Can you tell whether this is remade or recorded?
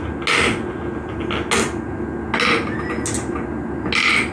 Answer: recorded